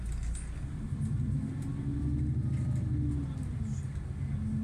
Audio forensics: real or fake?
real